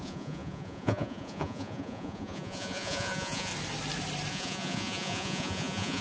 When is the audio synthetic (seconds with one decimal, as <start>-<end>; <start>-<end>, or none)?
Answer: 0.0-3.5; 4.3-6.0